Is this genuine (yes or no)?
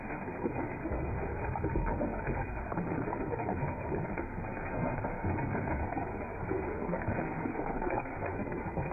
no